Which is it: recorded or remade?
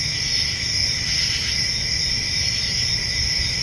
recorded